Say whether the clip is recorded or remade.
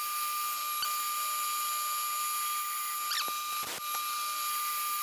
recorded